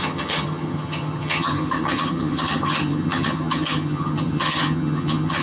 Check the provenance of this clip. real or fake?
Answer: fake